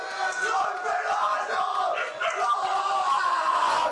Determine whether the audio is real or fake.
fake